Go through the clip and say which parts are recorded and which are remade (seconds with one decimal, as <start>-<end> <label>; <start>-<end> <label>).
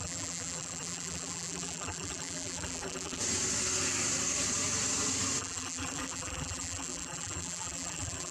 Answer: 0.0-3.2 remade; 3.2-5.4 recorded; 5.4-8.3 remade